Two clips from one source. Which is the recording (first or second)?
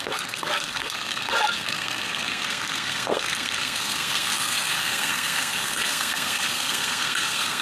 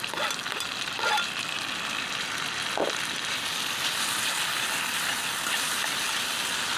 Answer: second